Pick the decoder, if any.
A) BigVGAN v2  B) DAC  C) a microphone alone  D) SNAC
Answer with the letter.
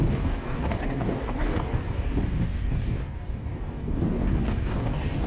B